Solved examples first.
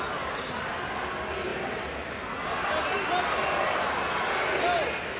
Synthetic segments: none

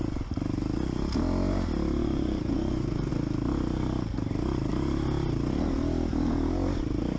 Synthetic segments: 2.0-3.1 (vocoder, Vocos)

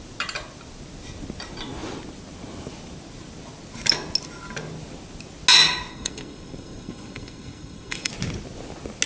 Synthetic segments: 5.9-8.1 (codec, SNAC)

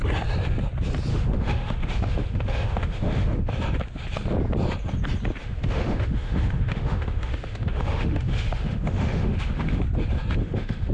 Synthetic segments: 1.1-3.5 (autoencoder, DAC-VAE); 5.4-9.8; 10.4-10.9

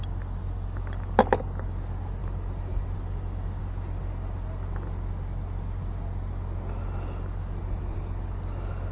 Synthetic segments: none

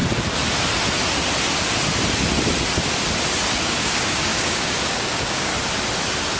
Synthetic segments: 3.5-5.5 (codec, DAC)